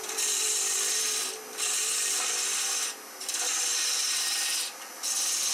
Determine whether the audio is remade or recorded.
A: remade